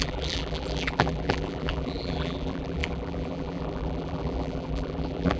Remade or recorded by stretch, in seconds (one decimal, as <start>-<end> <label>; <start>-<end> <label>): 0.0-5.4 remade